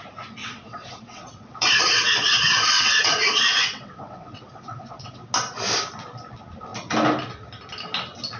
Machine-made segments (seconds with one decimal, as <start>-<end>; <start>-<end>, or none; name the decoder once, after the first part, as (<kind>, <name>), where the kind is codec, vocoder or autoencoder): 0.4-5.3 (vocoder, WaveNeXt)